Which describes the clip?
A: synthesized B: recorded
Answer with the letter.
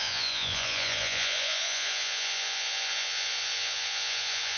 A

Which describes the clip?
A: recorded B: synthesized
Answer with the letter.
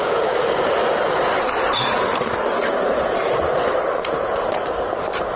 B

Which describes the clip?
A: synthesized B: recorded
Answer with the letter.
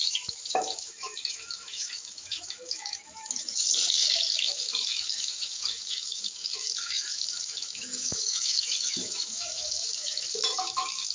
A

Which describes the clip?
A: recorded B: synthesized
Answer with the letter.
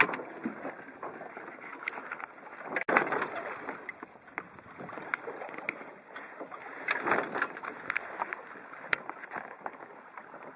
A